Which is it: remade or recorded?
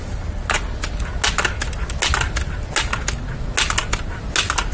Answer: recorded